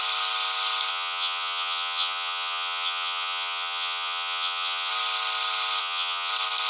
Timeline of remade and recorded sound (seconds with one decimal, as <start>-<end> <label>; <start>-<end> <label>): 0.0-0.9 recorded; 0.9-4.9 remade; 4.9-5.8 recorded; 5.8-6.3 remade; 6.3-6.7 recorded